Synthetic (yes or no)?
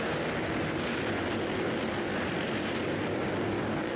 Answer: no